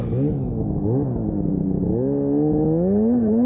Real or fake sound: real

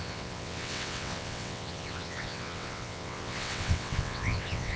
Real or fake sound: fake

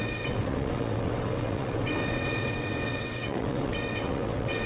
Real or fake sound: fake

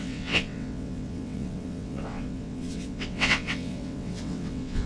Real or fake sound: fake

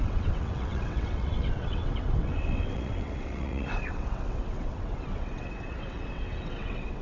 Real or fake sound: fake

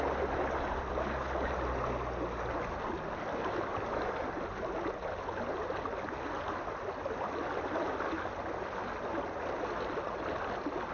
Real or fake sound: real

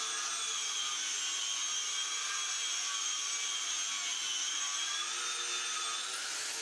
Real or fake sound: real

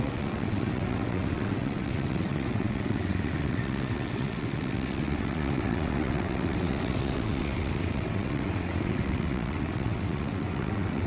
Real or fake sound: fake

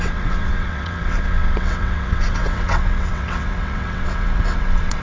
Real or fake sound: fake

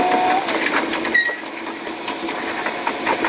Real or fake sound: real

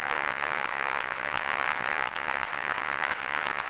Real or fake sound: fake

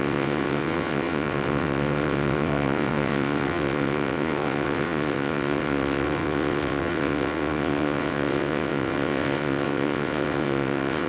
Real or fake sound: fake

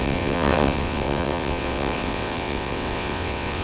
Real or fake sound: fake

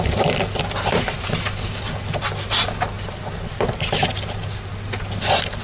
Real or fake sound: real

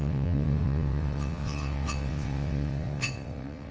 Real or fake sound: fake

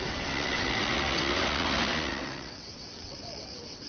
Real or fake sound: fake